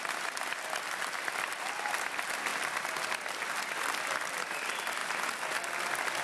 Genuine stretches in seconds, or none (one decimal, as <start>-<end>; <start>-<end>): 0.0-6.2